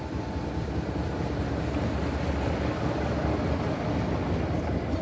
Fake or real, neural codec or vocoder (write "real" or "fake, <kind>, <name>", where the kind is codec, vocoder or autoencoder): real